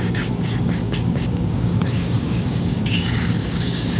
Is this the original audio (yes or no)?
no